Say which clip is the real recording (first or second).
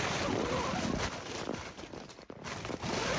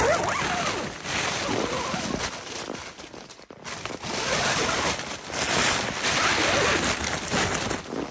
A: second